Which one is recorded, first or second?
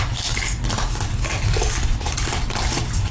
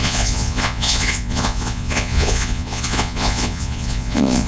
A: first